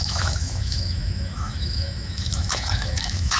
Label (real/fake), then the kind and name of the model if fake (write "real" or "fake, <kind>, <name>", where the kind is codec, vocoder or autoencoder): fake, autoencoder, DAC-VAE